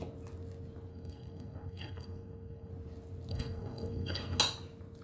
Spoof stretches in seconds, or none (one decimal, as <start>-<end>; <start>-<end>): 0.9-2.7; 3.3-4.4